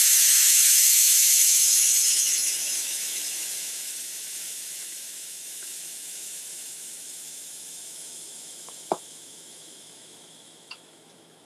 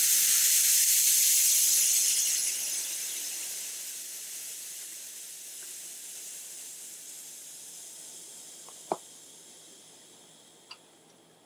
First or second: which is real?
second